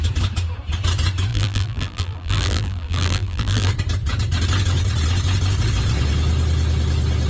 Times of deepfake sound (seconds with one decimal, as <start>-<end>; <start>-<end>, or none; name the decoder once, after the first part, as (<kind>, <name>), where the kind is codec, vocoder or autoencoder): 1.3-3.7 (vocoder, BigVGAN v2)